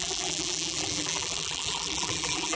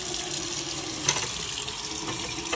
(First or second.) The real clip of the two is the second